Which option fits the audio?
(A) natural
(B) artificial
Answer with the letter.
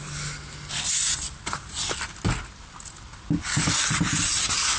A